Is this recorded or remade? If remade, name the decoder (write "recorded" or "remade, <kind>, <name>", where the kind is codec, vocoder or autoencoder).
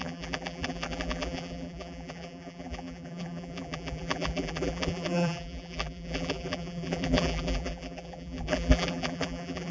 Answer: remade, vocoder, BigVGAN v2